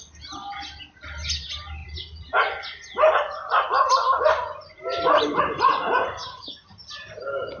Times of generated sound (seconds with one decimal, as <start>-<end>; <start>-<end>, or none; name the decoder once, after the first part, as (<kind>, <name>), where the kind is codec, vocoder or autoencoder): 6.2-6.7 (autoencoder, DAC-VAE)